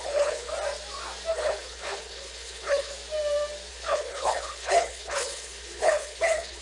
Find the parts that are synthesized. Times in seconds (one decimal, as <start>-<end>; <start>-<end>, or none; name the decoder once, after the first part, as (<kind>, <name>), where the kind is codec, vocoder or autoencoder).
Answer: 0.0-0.5 (codec, HILCodec); 1.3-2.9; 3.7-6.6

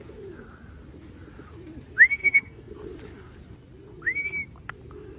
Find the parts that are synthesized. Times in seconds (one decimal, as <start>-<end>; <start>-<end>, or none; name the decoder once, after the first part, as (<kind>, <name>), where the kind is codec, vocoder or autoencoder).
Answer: 2.2-2.7 (codec, DAC)

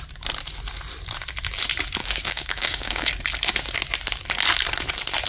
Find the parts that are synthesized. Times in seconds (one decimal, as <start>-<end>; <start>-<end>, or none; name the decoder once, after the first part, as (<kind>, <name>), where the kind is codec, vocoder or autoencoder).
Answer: 2.0-3.1 (codec, DAC)

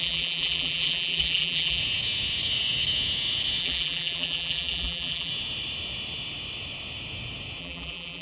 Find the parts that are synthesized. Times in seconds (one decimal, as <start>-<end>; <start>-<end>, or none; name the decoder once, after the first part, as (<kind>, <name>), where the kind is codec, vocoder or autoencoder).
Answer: 0.0-1.8 (vocoder, BigVGAN v2); 3.6-5.3; 7.6-8.2